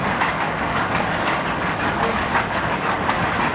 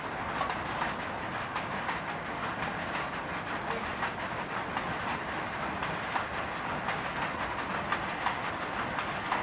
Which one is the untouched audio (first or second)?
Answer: second